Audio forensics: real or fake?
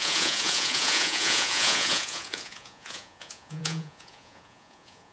fake